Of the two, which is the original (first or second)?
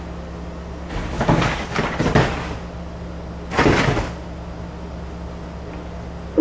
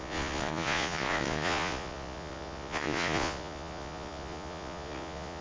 first